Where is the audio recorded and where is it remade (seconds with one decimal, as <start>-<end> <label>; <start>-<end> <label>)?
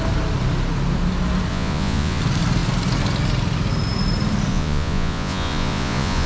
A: 0.0-1.5 recorded; 1.5-2.2 remade; 2.2-4.5 recorded; 4.5-6.3 remade